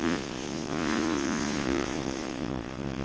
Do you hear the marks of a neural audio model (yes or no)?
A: yes